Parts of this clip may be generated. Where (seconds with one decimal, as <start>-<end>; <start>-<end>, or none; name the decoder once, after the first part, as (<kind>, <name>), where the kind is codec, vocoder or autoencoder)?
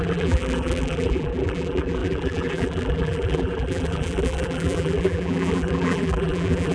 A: 0.0-6.7 (vocoder, BigVGAN v2)